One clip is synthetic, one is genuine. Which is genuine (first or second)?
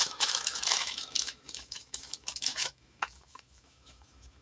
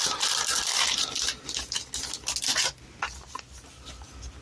second